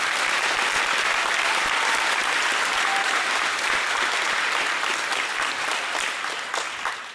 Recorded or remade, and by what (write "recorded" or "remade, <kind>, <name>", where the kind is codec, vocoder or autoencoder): recorded